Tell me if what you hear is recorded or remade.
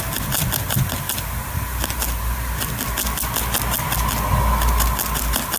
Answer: recorded